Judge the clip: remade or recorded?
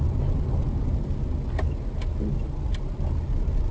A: recorded